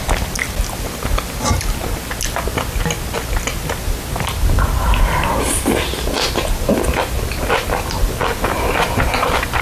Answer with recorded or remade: recorded